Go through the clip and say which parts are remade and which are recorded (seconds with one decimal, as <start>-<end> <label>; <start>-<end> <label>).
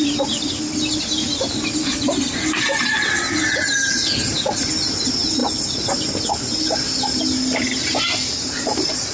0.0-9.1 recorded